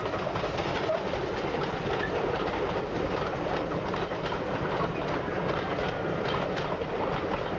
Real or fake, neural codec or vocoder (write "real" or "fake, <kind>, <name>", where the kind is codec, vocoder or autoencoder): real